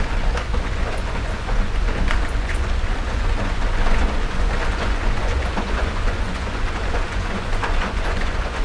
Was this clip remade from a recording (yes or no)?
yes